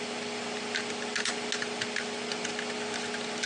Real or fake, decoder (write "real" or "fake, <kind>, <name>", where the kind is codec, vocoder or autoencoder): real